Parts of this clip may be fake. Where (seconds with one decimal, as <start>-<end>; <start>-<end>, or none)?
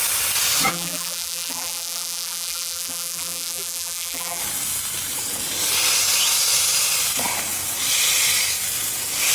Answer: 0.7-4.4